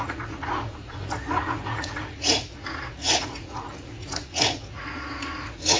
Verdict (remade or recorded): remade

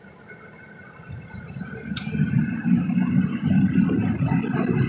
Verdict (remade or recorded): recorded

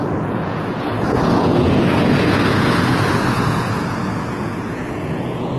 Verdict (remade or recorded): remade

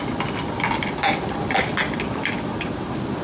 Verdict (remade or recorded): recorded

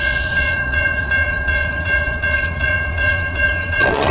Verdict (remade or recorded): remade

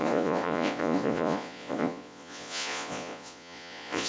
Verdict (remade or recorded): remade